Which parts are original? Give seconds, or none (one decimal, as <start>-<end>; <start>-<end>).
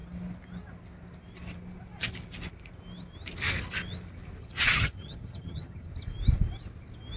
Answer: 0.0-4.4; 5.9-7.2